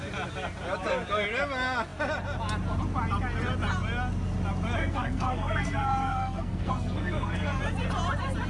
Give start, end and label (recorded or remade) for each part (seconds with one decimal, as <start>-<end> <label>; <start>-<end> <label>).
0.0-4.8 recorded; 4.8-7.6 remade; 7.6-8.5 recorded